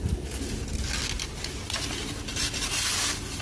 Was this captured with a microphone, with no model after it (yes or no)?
yes